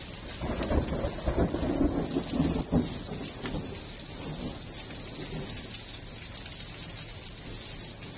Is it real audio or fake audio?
real